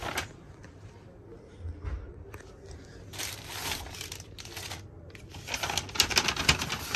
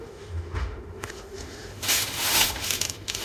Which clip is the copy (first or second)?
second